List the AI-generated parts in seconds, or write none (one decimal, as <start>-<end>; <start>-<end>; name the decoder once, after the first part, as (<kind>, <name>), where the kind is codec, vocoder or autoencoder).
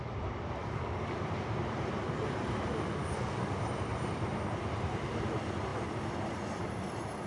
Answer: 0.6-1.2 (codec, DAC); 3.0-3.6